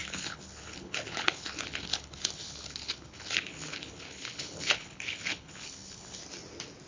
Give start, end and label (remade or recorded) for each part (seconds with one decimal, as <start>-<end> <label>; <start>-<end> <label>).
0.0-6.2 remade; 6.2-6.9 recorded